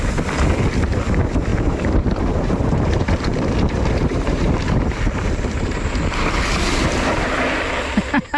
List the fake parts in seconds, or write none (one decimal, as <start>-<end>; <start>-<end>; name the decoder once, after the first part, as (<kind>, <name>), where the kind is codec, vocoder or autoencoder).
1.5-5.9 (vocoder, BigVGAN v2)